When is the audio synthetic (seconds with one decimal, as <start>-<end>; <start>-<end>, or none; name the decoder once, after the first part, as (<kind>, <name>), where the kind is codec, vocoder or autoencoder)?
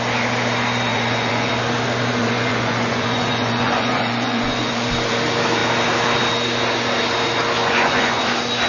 0.9-1.5 (vocoder, Vocos); 2.2-4.9; 7.6-8.2